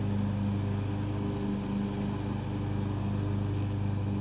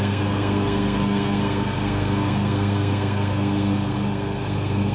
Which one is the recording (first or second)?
first